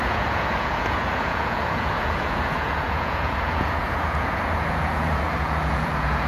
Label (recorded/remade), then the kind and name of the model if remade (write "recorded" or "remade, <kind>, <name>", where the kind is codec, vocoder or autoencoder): remade, vocoder, Vocos